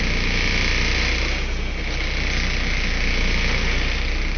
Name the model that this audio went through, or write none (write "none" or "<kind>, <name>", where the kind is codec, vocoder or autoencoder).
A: none